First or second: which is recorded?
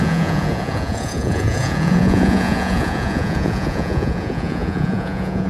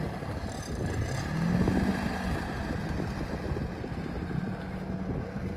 second